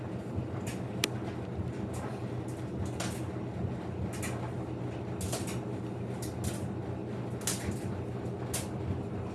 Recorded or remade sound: recorded